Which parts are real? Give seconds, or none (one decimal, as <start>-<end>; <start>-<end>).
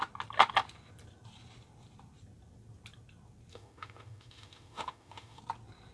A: 0.0-3.5; 5.4-5.9